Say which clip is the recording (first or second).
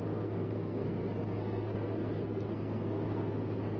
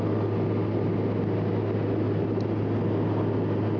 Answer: second